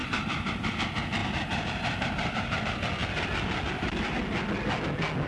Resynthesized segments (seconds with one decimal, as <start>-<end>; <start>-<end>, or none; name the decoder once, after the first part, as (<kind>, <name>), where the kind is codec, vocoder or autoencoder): 0.0-0.7 (vocoder, BigVGAN v2); 1.2-2.6